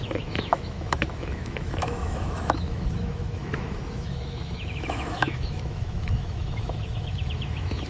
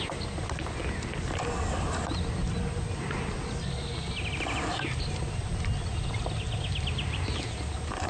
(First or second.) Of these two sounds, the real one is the second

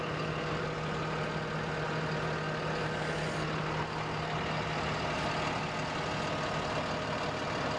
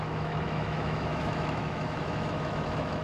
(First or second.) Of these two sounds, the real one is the first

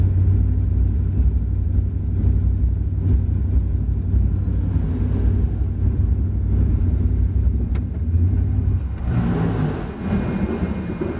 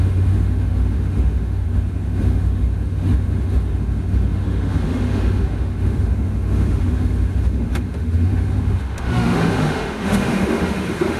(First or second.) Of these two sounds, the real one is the first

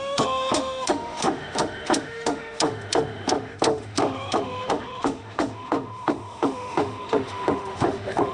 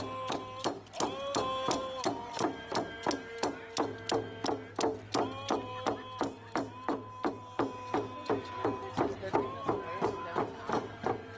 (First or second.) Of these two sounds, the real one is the second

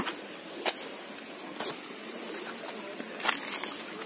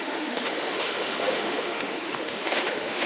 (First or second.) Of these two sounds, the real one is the first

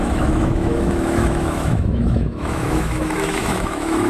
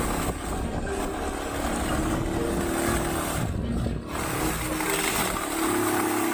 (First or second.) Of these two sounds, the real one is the second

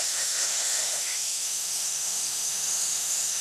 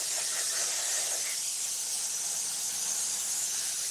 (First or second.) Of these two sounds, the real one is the second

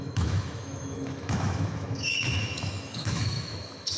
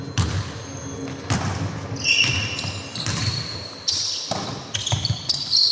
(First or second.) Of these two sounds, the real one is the second